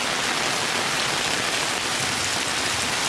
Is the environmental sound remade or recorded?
recorded